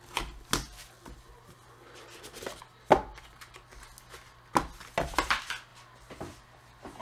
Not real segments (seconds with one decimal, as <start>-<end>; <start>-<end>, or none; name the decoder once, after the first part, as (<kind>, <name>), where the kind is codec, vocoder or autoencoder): none